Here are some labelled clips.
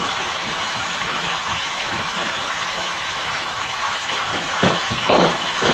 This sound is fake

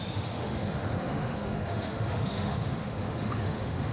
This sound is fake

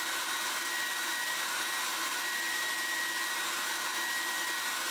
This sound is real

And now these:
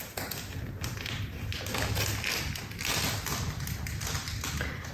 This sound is real